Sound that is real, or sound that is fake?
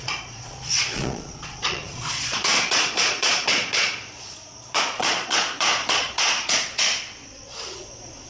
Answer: fake